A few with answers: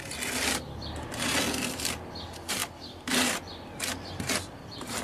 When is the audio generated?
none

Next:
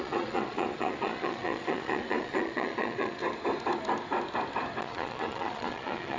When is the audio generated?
0.0-3.2; 4.8-6.2

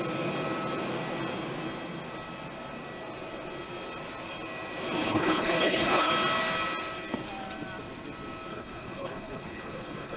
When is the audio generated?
5.0-6.1; 8.5-10.2

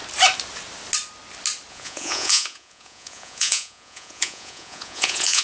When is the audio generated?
1.7-5.4

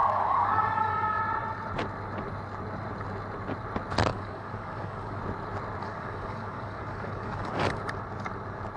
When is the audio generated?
0.0-1.2; 4.1-5.2; 5.8-7.8